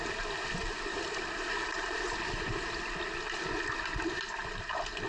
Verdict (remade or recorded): recorded